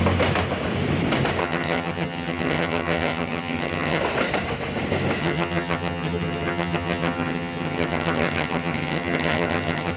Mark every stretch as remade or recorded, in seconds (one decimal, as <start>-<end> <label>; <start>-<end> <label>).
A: 0.0-1.4 recorded; 1.4-4.0 remade; 4.0-5.2 recorded; 5.2-10.0 remade